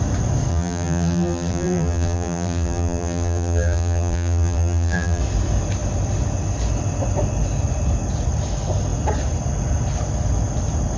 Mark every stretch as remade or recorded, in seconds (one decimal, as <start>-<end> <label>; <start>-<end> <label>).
0.0-0.5 recorded; 0.5-5.2 remade; 5.2-11.0 recorded